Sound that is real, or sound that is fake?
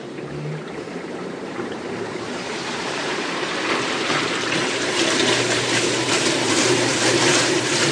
fake